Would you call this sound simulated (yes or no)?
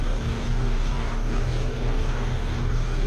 yes